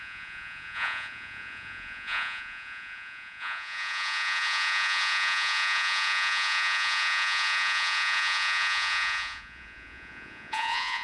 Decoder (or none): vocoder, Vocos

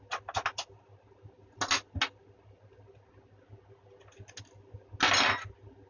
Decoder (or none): none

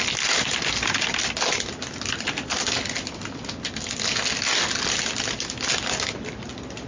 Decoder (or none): none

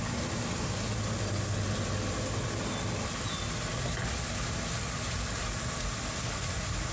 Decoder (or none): none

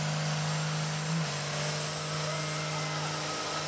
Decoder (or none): none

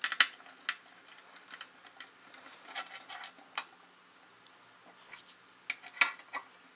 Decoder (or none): none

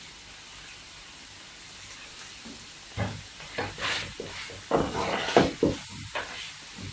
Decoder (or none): none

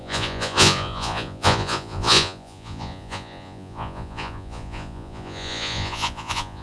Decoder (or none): vocoder, Vocos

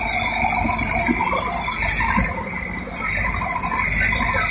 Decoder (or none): none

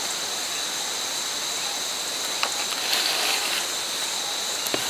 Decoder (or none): none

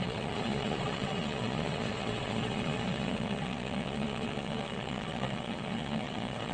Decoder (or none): vocoder, Vocos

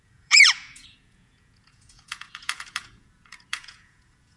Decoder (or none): vocoder, Vocos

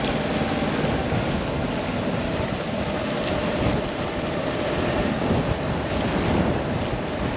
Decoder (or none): none